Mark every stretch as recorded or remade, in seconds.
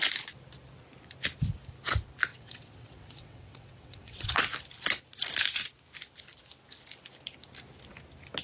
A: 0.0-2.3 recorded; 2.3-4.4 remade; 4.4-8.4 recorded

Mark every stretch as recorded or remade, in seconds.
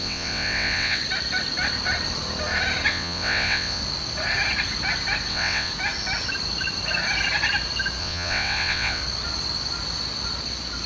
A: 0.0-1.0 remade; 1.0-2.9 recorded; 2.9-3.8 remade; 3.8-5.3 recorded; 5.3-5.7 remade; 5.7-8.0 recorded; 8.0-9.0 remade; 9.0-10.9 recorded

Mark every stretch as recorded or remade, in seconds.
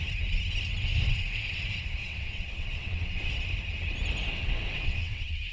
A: 0.0-2.0 recorded; 2.0-3.3 remade; 3.3-4.3 recorded; 4.3-5.5 remade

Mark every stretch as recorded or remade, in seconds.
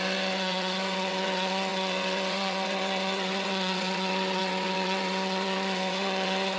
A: 0.0-6.6 remade